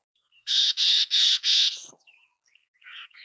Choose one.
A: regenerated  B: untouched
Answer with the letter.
A